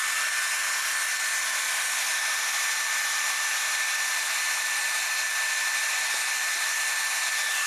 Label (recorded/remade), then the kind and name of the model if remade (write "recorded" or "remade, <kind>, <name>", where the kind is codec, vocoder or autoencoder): recorded